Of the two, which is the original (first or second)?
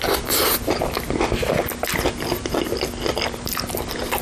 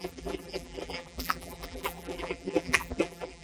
first